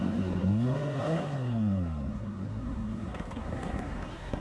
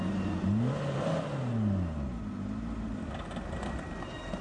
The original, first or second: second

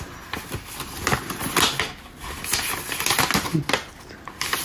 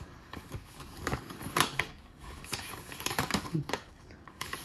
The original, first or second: first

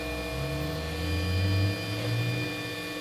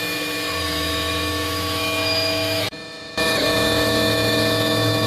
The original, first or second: first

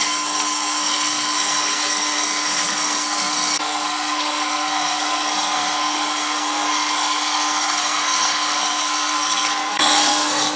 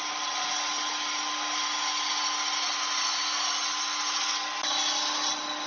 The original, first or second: second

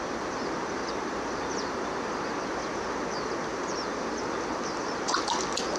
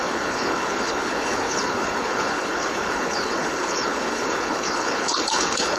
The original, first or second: first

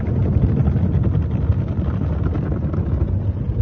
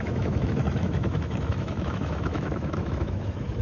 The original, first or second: first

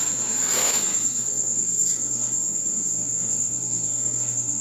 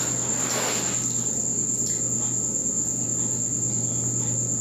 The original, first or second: second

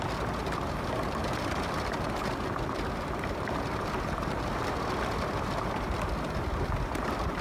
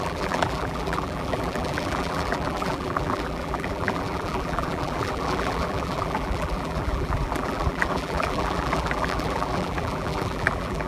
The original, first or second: first